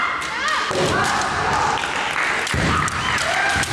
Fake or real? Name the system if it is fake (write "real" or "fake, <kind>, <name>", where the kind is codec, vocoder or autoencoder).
real